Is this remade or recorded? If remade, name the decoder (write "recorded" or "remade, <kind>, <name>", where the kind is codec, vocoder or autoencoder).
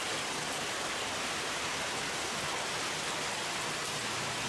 recorded